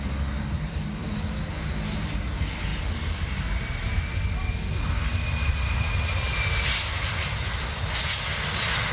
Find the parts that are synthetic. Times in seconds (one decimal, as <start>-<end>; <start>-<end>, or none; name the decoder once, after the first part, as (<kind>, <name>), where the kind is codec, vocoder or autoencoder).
none